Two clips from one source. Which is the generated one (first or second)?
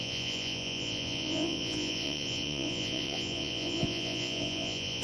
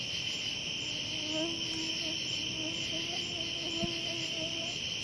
first